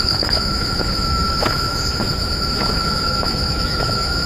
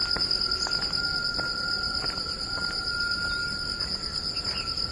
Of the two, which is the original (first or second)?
second